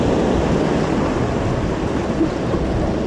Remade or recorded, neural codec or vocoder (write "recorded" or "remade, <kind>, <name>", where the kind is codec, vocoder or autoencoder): recorded